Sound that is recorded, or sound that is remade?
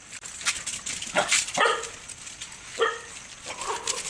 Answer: recorded